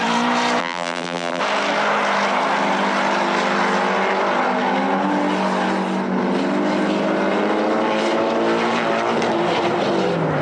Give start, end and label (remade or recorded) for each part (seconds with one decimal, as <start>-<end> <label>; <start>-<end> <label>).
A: 0.0-0.6 recorded; 0.6-1.4 remade; 1.4-10.4 recorded